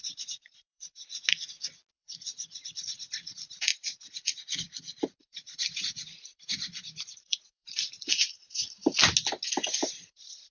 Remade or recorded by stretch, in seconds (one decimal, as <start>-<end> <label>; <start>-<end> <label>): 0.0-1.1 remade; 1.1-1.9 recorded; 1.9-8.9 remade; 8.9-9.6 recorded; 9.6-10.5 remade